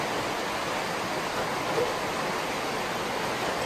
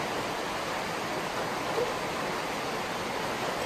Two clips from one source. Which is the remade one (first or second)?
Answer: second